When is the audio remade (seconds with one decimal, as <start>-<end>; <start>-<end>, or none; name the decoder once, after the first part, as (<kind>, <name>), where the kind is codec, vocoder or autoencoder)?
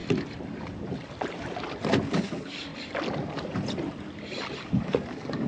2.1-2.7 (codec, DAC); 4.6-5.5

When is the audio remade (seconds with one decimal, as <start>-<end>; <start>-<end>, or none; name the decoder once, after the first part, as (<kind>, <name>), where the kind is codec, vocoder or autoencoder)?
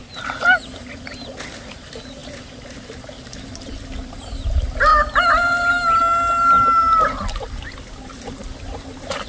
none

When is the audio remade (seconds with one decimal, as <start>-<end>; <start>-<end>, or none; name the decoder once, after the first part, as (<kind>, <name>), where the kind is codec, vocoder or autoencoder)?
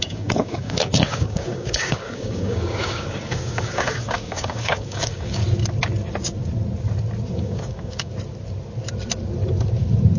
0.0-5.4 (codec, DAC); 7.3-8.1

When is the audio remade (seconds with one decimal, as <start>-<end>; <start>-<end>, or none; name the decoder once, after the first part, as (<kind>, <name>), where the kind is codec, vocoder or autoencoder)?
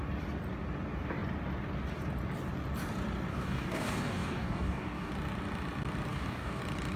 3.3-5.1 (codec, DAC); 6.1-6.6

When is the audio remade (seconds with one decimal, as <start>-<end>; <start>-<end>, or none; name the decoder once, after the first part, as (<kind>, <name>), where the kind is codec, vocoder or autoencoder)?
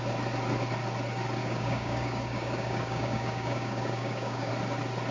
1.4-4.5 (codec, DAC)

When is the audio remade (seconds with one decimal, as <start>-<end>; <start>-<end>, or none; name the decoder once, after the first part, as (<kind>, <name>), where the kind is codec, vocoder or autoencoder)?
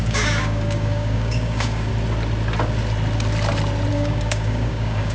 0.0-1.9 (codec, DAC); 3.9-5.1